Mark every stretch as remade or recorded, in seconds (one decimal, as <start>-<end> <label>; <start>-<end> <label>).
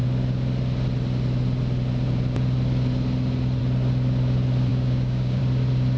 0.0-4.7 recorded; 4.7-5.4 remade; 5.4-6.0 recorded